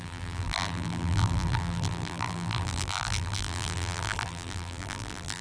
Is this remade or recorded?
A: remade